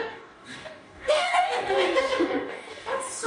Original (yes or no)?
no